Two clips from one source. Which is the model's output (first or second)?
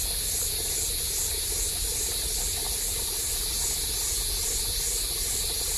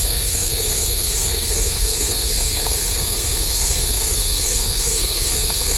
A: second